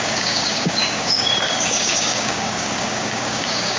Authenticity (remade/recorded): remade